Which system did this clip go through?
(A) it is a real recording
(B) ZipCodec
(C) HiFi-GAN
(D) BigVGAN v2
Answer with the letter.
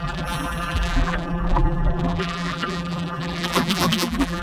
D